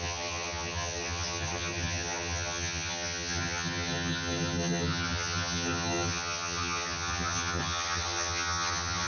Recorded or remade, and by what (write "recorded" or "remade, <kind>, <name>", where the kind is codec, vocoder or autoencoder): remade, vocoder, HiFi-GAN